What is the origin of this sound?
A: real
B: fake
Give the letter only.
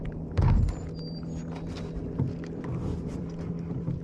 A